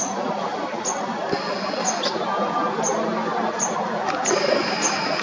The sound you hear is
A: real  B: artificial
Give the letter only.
A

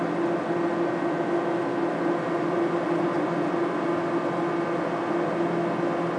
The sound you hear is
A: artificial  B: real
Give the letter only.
B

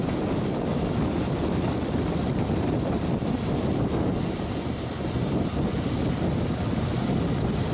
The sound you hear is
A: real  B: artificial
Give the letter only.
A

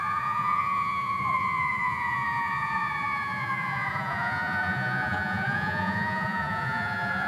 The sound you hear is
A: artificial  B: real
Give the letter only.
A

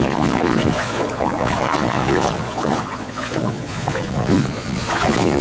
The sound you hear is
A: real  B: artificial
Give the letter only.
B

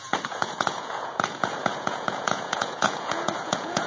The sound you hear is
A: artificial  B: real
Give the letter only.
A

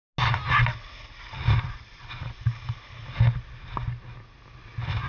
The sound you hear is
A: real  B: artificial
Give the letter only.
A